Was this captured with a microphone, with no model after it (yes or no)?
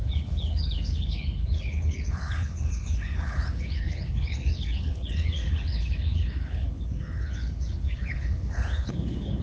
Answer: no